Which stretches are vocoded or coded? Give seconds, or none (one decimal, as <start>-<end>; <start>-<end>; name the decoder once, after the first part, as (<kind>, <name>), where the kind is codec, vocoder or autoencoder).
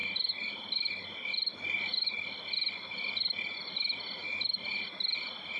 none